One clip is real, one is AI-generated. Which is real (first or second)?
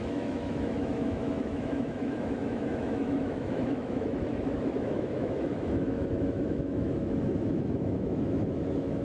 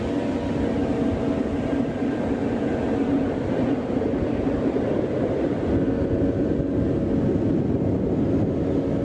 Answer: second